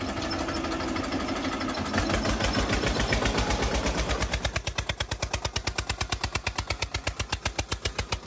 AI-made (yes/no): no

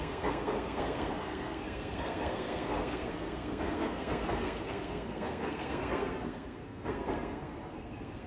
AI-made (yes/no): yes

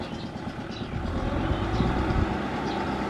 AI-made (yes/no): no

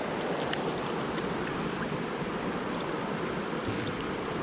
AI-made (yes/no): yes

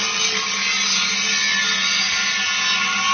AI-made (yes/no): no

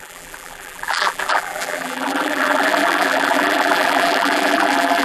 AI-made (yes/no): yes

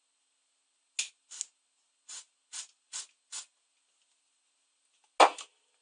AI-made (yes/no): no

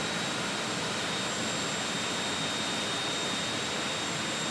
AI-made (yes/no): no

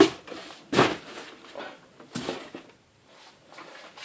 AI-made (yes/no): no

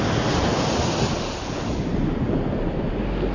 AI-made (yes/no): no